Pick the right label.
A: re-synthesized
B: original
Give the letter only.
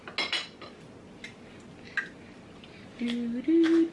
B